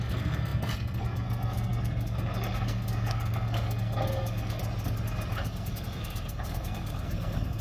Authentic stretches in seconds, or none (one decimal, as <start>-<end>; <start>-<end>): 4.6-5.3

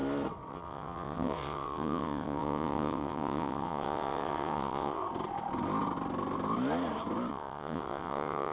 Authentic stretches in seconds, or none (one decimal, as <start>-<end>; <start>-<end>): 0.0-0.5; 5.0-7.3

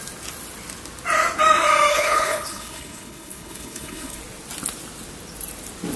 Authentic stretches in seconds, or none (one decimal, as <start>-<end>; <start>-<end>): 0.0-1.9; 4.2-6.0

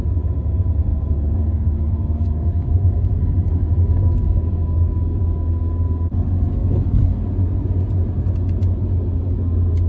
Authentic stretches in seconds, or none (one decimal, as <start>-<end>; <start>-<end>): 0.0-0.9; 5.7-6.6; 7.2-9.9